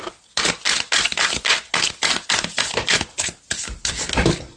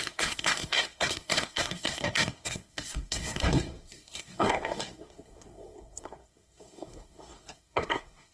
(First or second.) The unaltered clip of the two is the first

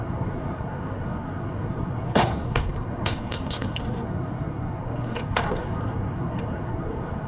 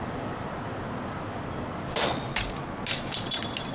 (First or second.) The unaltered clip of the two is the second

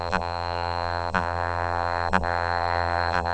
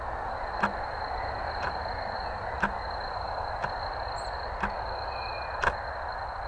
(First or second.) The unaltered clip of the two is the second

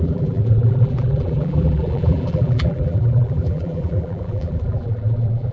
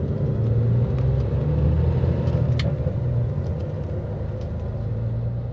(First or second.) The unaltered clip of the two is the second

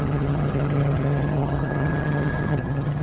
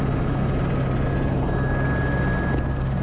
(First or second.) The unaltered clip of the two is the second